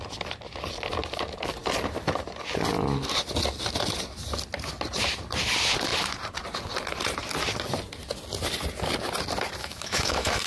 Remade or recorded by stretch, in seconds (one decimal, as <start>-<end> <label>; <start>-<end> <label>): 0.0-9.6 recorded; 9.6-10.5 remade

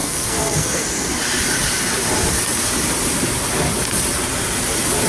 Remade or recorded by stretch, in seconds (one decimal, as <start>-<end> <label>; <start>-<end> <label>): 0.0-1.1 remade; 1.1-5.1 recorded

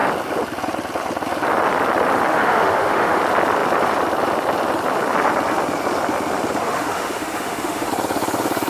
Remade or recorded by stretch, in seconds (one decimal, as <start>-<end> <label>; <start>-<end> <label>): 0.0-2.3 recorded; 2.3-3.2 remade; 3.2-6.6 recorded; 6.6-7.9 remade; 7.9-8.7 recorded